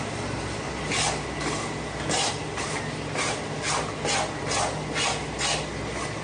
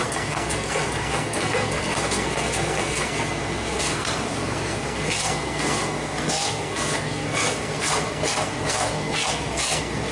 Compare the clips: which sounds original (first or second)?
first